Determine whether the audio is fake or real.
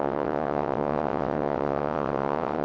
fake